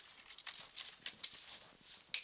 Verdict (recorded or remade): recorded